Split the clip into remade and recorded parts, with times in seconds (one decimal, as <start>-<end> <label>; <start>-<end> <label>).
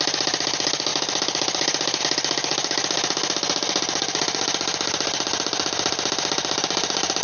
0.0-7.2 recorded